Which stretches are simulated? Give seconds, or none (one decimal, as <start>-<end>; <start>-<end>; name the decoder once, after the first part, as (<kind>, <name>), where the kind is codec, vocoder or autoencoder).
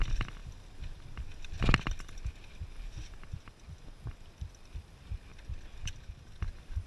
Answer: none